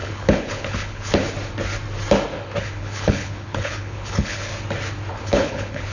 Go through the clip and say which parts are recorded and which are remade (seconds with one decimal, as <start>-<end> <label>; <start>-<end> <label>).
0.0-1.2 remade; 1.2-2.6 recorded; 2.6-4.5 remade; 4.5-5.1 recorded; 5.1-5.9 remade